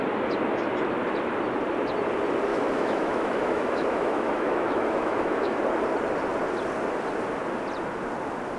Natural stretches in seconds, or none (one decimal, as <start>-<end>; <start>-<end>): 0.0-2.5; 5.6-8.6